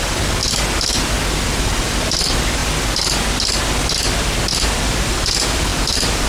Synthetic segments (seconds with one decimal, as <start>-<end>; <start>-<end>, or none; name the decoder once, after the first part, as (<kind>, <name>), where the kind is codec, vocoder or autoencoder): 0.0-0.4 (vocoder, BigVGAN v2); 1.5-2.6; 4.5-6.3